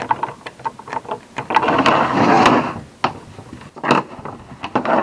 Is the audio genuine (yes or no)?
yes